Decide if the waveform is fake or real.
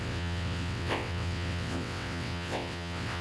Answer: fake